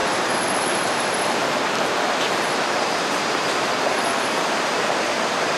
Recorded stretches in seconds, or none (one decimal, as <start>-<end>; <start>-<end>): none